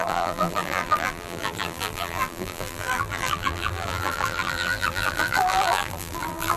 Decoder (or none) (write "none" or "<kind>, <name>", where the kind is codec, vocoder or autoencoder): vocoder, BigVGAN v2